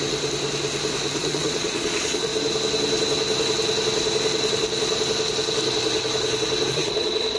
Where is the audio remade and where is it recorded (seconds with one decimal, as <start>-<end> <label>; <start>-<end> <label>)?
0.0-1.2 recorded; 1.2-2.3 remade; 2.3-6.7 recorded; 6.7-7.4 remade